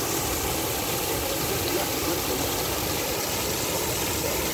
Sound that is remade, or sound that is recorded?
recorded